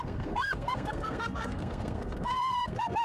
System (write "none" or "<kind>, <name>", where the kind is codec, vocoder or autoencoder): codec, SNAC